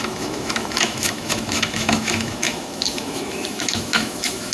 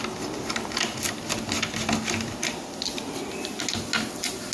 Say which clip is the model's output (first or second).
first